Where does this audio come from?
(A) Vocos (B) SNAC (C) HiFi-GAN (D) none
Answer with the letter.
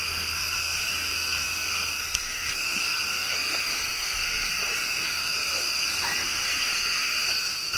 B